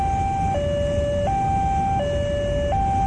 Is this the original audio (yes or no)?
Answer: yes